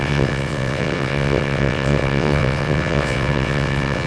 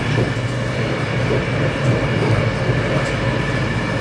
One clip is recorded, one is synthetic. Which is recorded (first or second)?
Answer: second